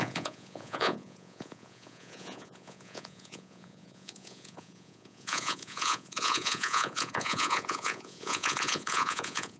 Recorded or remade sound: remade